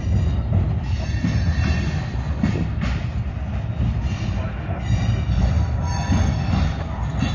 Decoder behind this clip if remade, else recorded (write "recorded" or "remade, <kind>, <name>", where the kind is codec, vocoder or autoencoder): recorded